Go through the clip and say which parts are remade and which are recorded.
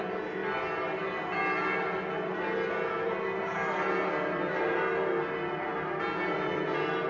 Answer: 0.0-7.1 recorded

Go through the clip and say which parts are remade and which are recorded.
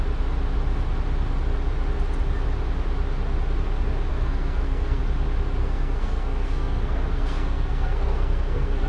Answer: 0.0-4.1 recorded; 4.1-5.0 remade; 5.0-5.6 recorded; 5.6-8.9 remade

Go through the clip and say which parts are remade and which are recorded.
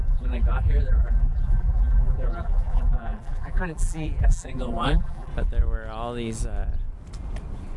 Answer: 0.0-5.3 remade; 5.3-7.8 recorded